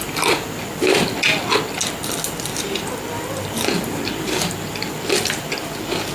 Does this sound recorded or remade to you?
recorded